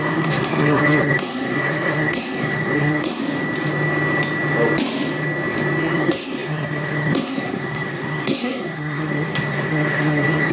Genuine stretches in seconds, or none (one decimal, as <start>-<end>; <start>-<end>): 3.2-5.8